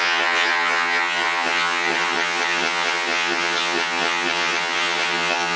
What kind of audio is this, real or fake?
fake